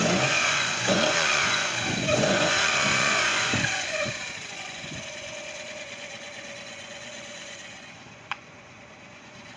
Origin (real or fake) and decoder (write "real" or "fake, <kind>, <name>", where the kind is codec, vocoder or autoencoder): fake, vocoder, Vocos